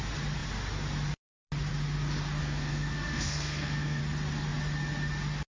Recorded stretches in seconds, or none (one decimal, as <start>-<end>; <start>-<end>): 0.0-2.4; 4.0-5.5